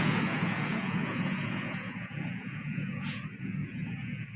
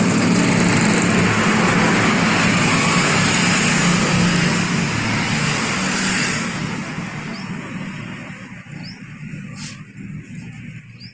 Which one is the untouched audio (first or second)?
second